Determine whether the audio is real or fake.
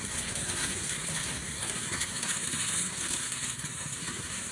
fake